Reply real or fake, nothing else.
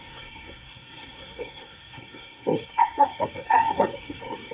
fake